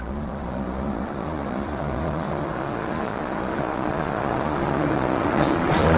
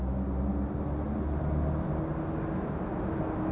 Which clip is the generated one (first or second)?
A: first